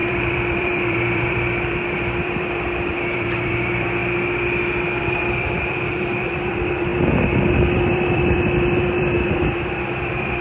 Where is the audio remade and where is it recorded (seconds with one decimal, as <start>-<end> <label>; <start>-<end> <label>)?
0.0-4.0 remade; 4.0-5.0 recorded; 5.0-6.9 remade; 6.9-7.5 recorded; 7.5-10.4 remade